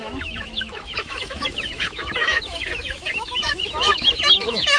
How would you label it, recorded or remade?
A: remade